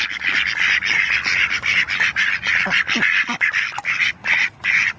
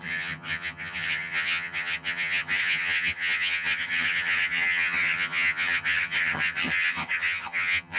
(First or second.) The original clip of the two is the first